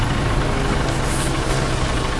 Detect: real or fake real